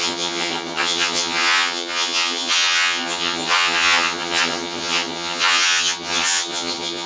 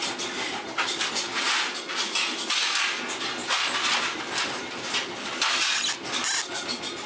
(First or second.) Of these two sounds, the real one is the second